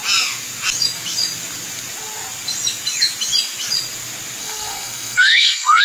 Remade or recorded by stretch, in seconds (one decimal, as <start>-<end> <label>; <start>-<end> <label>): 0.0-4.4 recorded; 4.4-5.8 remade